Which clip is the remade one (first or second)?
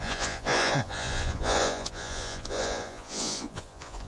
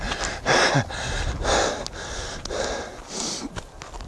first